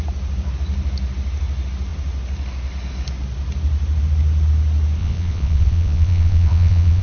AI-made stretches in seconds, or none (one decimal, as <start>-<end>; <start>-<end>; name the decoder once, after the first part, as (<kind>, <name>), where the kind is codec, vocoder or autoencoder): 5.0-7.0 (vocoder, Vocos)